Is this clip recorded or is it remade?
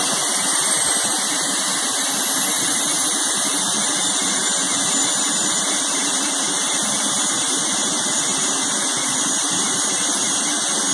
recorded